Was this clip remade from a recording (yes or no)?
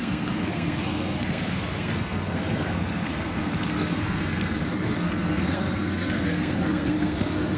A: yes